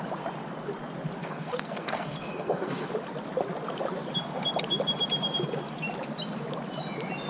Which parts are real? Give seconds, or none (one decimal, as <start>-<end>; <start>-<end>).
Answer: 0.0-1.2; 2.9-7.3

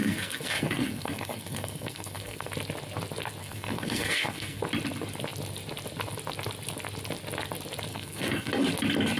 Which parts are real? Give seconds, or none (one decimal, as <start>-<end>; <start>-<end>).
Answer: 2.5-3.4; 4.6-7.9; 8.5-9.2

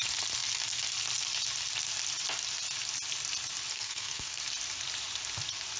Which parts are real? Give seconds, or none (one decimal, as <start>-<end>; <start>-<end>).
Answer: 0.0-3.7; 4.4-5.8

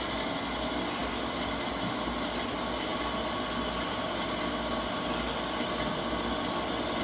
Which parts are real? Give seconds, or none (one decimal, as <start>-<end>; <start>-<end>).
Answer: 0.0-7.0

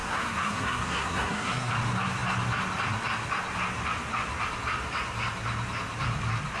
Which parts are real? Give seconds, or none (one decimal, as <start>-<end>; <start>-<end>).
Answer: 1.7-6.6

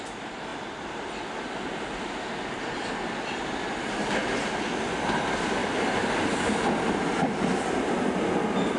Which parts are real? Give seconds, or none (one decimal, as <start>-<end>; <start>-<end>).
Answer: 0.0-8.8